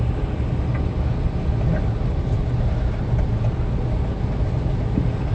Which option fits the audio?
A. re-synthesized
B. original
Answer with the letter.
B